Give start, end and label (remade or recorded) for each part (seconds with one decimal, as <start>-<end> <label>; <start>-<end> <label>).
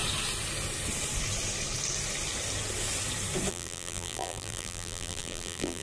0.0-3.5 recorded; 3.5-5.8 remade